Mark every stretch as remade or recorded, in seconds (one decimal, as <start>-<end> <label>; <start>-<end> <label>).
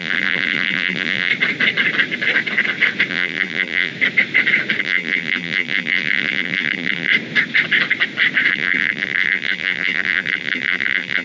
0.0-1.3 remade; 1.3-3.1 recorded; 3.1-3.9 remade; 3.9-4.8 recorded; 4.8-7.1 remade; 7.1-8.5 recorded; 8.5-11.2 remade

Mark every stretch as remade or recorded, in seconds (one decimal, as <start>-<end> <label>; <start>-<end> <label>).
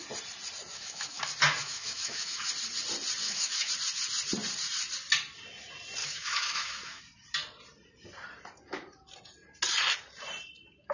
0.0-0.7 recorded; 0.7-1.2 remade; 1.2-1.6 recorded; 1.6-2.5 remade; 2.5-3.2 recorded; 3.2-3.7 remade; 3.7-6.0 recorded; 6.0-7.0 remade; 7.0-10.9 recorded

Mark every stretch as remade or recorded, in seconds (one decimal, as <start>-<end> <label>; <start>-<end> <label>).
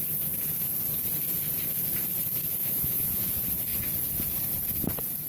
0.0-2.6 recorded; 2.6-3.3 remade; 3.3-5.3 recorded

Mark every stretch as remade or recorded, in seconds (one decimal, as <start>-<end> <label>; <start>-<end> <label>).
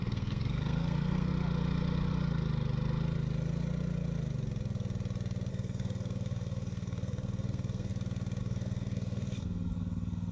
0.0-1.3 remade; 1.3-5.5 recorded; 5.5-7.9 remade; 7.9-8.4 recorded; 8.4-10.3 remade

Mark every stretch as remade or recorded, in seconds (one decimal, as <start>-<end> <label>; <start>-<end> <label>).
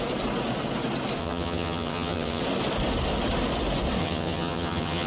0.0-1.2 recorded; 1.2-2.4 remade; 2.4-4.0 recorded; 4.0-5.1 remade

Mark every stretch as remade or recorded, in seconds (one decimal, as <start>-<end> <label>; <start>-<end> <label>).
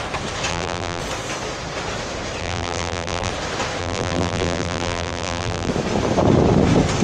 0.0-0.5 recorded; 0.5-1.0 remade; 1.0-2.4 recorded; 2.4-3.3 remade; 3.3-3.8 recorded; 3.8-5.7 remade; 5.7-7.0 recorded